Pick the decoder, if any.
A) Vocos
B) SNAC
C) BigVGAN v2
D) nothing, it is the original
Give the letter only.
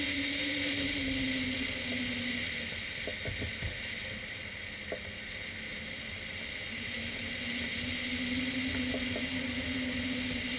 D